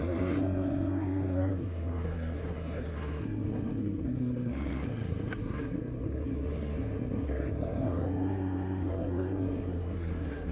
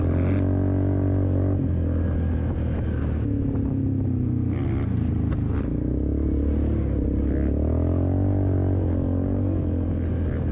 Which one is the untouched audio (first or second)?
second